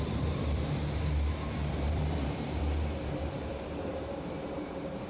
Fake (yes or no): yes